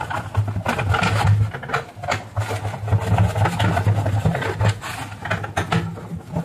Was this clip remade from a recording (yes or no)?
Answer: no